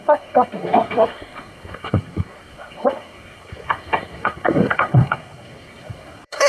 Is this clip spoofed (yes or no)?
yes